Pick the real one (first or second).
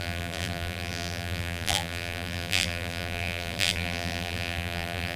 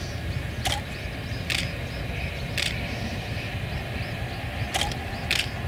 second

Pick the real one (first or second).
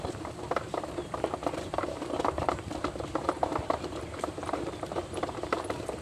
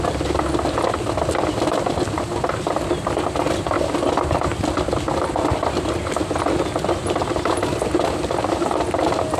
second